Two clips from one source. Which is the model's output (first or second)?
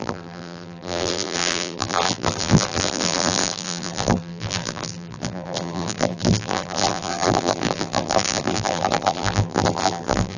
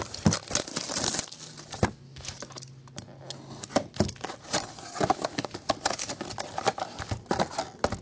first